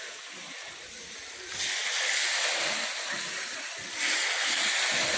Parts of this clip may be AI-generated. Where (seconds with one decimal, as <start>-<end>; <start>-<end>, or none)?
none